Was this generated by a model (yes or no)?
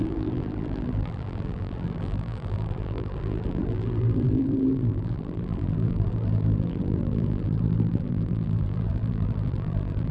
yes